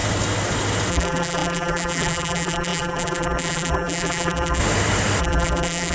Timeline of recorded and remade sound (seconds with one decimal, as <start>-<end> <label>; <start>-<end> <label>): 0.0-0.9 recorded; 0.9-4.6 remade; 4.6-5.2 recorded; 5.2-5.9 remade

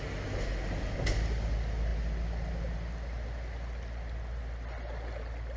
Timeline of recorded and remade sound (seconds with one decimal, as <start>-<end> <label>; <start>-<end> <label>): 0.0-5.6 recorded

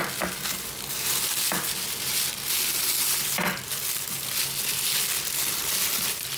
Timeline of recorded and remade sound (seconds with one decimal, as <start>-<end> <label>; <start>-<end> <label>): 0.0-6.4 recorded

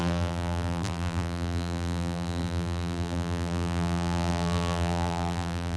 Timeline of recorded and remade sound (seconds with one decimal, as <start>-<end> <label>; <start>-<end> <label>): 0.0-5.8 remade

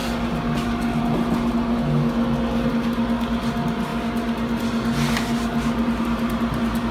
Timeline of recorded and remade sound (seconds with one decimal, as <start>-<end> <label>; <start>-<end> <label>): 0.0-6.9 recorded

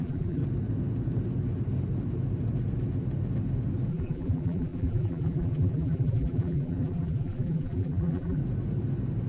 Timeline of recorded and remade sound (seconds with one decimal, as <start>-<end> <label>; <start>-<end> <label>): 0.0-0.4 remade; 0.4-3.9 recorded; 3.9-8.4 remade; 8.4-9.3 recorded

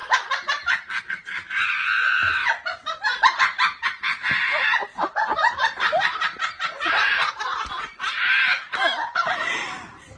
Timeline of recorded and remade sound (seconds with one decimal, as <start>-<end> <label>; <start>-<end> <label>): 0.0-1.0 recorded; 1.0-10.2 remade

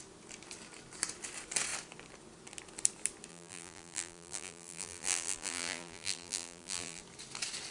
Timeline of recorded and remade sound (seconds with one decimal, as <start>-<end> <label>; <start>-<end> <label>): 0.0-3.3 recorded; 3.3-7.0 remade; 7.0-7.7 recorded